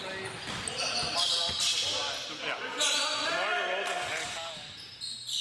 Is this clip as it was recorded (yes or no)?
yes